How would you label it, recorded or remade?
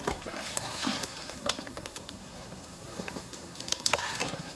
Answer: remade